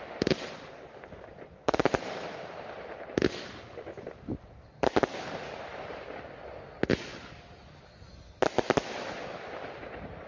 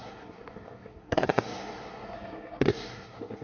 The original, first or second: first